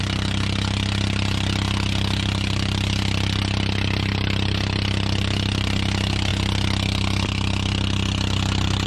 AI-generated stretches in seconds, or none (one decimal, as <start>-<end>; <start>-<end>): none